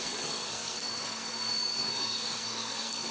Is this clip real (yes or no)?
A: no